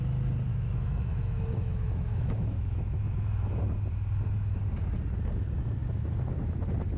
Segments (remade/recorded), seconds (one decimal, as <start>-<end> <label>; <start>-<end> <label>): 0.0-0.5 recorded; 0.5-3.5 remade; 3.5-7.0 recorded